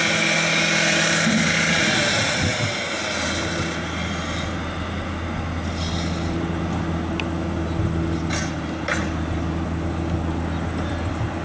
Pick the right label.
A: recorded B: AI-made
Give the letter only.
A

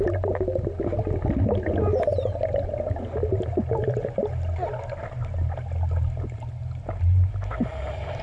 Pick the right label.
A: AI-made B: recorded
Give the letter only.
B